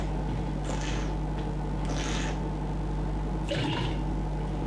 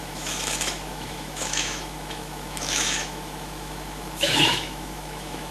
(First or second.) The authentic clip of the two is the first